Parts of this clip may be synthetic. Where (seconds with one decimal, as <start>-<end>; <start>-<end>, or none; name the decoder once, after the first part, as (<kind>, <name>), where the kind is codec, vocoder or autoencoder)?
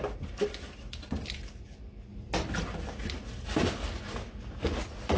none